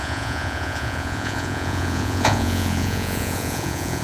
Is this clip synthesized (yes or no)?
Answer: yes